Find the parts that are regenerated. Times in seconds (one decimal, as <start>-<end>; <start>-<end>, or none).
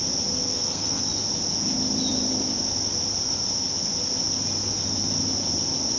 0.5-1.0